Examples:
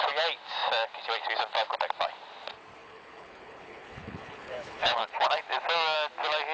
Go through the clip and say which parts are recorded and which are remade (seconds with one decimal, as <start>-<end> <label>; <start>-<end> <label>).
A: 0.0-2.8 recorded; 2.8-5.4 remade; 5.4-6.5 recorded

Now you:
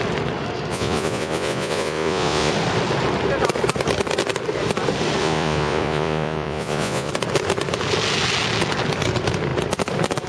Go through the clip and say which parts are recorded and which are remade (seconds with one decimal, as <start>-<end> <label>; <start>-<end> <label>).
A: 0.0-0.7 recorded; 0.7-2.5 remade; 2.5-5.2 recorded; 5.2-7.1 remade; 7.1-10.3 recorded

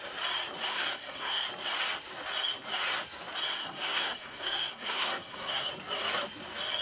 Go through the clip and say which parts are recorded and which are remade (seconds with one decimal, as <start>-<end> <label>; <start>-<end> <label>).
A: 0.0-0.7 recorded; 0.7-1.4 remade; 1.4-3.5 recorded; 3.5-5.7 remade; 5.7-6.8 recorded

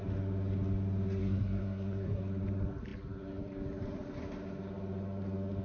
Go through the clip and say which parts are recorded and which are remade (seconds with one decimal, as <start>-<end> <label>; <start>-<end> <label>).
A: 0.0-1.2 recorded; 1.2-2.2 remade; 2.2-5.6 recorded

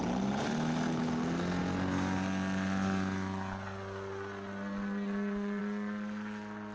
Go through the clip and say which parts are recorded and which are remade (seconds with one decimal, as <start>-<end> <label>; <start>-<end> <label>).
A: 0.0-6.7 recorded

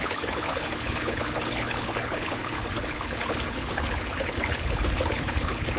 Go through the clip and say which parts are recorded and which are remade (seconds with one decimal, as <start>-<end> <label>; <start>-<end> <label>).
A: 0.0-5.8 remade